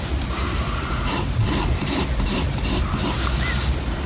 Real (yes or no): no